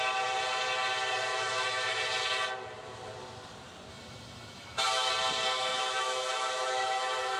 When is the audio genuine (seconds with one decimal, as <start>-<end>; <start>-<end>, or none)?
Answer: 0.0-1.3; 2.0-3.9; 5.1-5.7

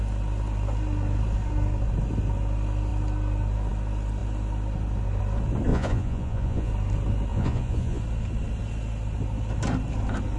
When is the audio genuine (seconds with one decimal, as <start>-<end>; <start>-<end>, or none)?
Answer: 0.0-5.7; 6.7-7.3; 8.0-10.4

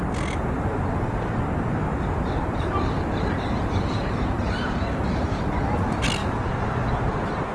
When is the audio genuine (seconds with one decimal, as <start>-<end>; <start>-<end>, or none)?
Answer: 0.0-1.9; 5.4-6.2

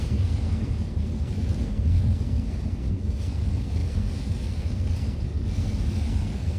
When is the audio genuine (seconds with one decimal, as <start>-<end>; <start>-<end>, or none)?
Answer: none

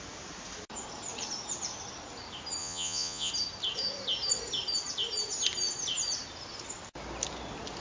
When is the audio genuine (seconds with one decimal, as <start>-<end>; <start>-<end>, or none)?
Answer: 0.0-2.6; 3.3-7.8

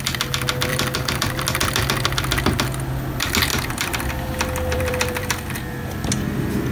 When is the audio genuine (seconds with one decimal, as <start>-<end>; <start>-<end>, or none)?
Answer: 0.0-0.7; 1.4-3.5; 5.5-6.7

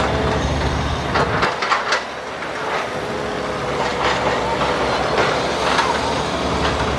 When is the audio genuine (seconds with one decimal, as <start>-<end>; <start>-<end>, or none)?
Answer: 0.0-7.0